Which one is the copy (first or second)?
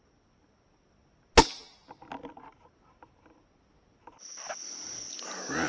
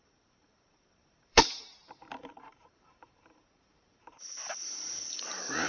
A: second